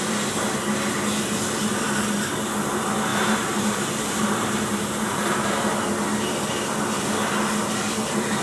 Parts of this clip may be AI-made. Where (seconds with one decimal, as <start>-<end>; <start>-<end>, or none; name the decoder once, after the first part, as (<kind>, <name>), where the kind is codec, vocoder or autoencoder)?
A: 3.1-5.6 (vocoder, BigVGAN v2)